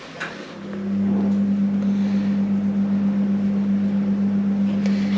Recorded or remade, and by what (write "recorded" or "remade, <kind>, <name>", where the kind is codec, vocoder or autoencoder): recorded